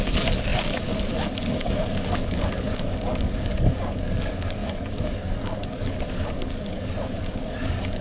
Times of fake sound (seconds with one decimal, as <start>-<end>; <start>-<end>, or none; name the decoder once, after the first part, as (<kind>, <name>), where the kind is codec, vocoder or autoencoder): 0.0-8.0 (codec, DAC)